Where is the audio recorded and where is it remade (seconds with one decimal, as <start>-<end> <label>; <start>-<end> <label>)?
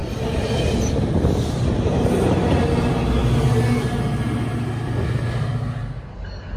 0.0-6.6 recorded